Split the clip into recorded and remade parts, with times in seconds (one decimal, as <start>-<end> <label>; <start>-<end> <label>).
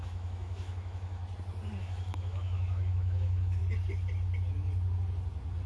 0.0-1.2 remade; 1.2-1.8 recorded; 1.8-3.6 remade; 3.6-5.7 recorded